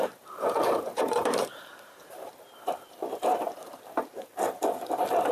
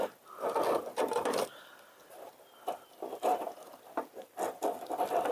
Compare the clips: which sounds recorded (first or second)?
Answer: second